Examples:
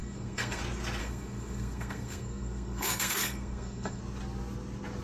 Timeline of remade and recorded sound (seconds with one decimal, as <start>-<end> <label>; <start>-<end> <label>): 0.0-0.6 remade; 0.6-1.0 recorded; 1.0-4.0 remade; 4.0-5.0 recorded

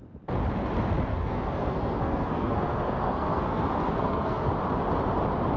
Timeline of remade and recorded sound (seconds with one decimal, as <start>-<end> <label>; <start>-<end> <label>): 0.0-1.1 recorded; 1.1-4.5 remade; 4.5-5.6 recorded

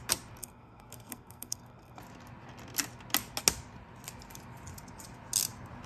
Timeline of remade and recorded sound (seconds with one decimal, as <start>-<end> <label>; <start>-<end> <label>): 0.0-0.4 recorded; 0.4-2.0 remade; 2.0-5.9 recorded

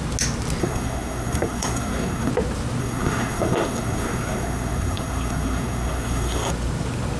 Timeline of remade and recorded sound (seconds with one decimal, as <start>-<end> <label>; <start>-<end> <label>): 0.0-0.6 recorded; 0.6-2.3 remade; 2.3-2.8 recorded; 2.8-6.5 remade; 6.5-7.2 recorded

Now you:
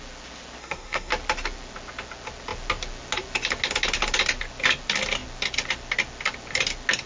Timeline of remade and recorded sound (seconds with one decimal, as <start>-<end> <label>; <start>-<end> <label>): 0.0-0.6 recorded; 0.6-1.1 remade; 1.1-7.1 recorded